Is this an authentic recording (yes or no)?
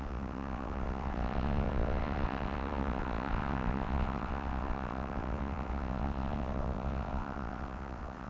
no